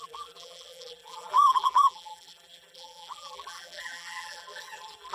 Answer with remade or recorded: remade